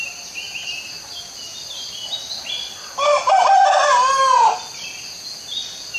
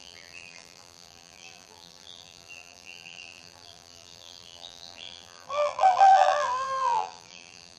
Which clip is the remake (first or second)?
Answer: second